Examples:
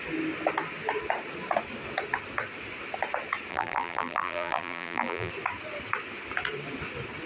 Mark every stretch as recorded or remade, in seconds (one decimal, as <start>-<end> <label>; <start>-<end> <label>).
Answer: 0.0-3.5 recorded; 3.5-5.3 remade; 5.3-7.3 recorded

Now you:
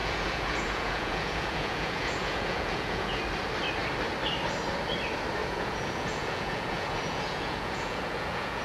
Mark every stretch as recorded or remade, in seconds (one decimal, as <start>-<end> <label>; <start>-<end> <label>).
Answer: 0.0-3.2 remade; 3.2-5.4 recorded; 5.4-8.6 remade

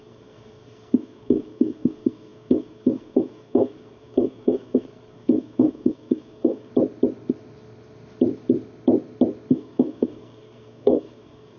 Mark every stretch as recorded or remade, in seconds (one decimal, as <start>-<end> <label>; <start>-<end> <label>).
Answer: 0.0-6.7 remade; 6.7-9.5 recorded; 9.5-11.6 remade